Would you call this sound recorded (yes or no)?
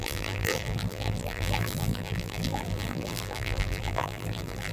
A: no